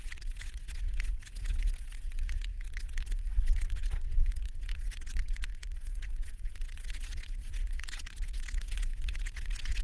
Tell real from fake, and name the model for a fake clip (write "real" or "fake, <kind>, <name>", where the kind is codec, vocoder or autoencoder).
fake, vocoder, WaveNeXt